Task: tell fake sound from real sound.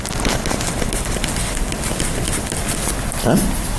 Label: fake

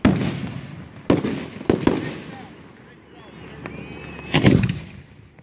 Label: real